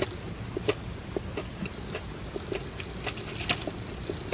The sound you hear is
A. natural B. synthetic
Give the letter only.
A